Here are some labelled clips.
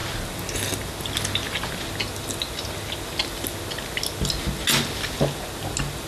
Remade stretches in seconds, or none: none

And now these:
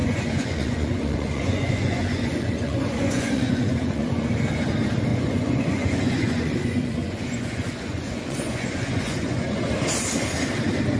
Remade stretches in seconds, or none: 0.0-4.3 (vocoder, Vocos); 5.1-9.6

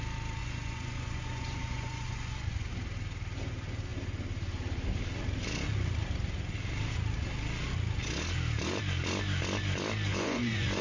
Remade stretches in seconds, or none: 0.4-2.7 (vocoder, Vocos); 10.1-10.8

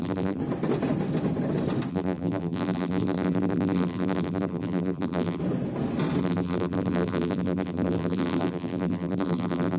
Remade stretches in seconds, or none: 0.0-0.4 (vocoder, BigVGAN v2); 1.9-5.4; 6.2-9.8

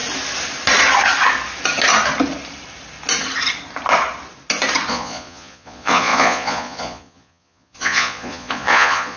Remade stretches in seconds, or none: 4.9-9.2 (vocoder, Vocos)